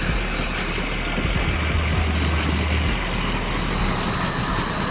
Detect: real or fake real